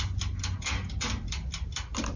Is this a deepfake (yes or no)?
no